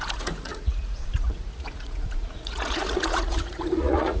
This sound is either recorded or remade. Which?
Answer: remade